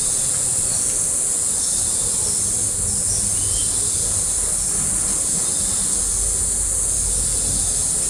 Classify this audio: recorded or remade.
recorded